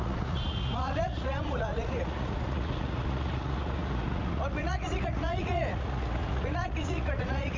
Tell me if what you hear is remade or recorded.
remade